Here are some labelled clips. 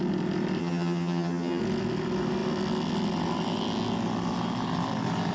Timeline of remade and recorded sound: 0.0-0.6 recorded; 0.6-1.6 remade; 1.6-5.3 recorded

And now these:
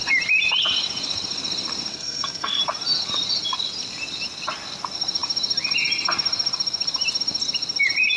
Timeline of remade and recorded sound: 0.0-1.9 recorded; 1.9-2.6 remade; 2.6-8.2 recorded